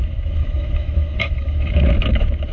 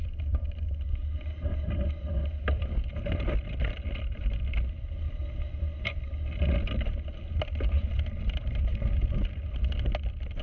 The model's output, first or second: first